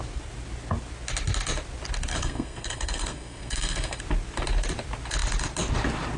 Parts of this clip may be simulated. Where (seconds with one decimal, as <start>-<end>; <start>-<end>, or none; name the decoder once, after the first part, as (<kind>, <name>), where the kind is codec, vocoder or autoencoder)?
2.1-4.0 (codec, SNAC)

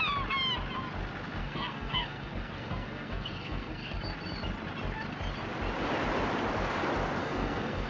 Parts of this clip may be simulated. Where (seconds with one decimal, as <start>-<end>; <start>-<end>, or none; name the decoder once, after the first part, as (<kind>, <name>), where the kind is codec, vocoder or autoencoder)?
1.4-4.0 (codec, SNAC); 7.2-7.9

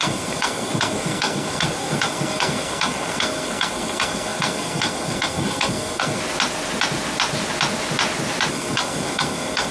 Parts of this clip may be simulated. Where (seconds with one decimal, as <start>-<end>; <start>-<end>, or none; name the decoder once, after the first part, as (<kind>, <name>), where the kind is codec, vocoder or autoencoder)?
0.0-6.2 (codec, SNAC); 8.5-9.7

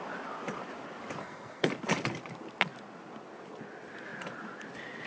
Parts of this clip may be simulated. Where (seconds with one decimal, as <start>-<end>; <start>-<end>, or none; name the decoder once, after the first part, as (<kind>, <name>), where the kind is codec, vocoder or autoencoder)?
1.2-1.7 (codec, SNAC)